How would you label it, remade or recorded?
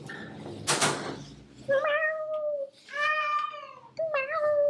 recorded